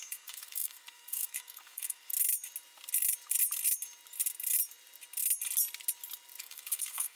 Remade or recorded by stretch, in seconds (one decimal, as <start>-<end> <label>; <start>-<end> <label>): 0.0-2.1 remade; 2.1-6.4 recorded; 6.4-7.2 remade